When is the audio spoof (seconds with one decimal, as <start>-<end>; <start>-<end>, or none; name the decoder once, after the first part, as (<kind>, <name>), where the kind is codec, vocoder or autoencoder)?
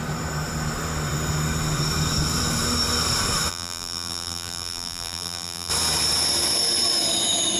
3.5-5.7 (vocoder, BigVGAN v2)